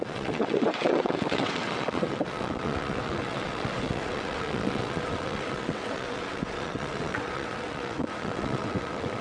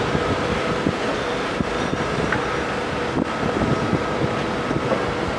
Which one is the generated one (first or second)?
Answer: first